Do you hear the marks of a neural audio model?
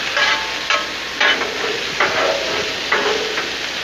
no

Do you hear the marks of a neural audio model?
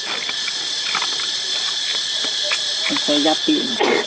no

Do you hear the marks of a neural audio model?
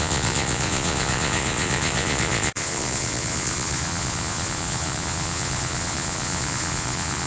yes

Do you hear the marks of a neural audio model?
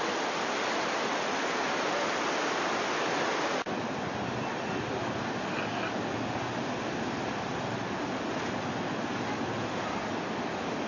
no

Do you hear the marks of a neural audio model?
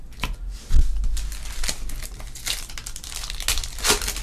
no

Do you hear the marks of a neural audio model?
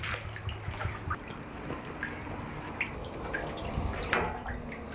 no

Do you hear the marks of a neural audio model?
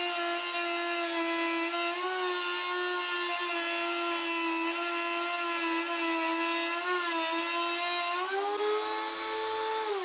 no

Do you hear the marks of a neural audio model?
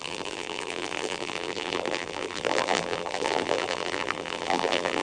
yes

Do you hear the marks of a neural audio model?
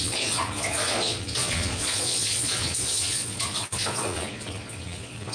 yes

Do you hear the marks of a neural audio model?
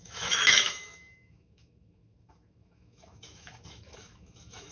yes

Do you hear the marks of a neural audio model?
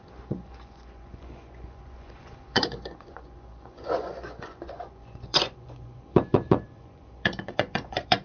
yes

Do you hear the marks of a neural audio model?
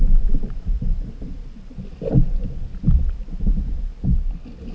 no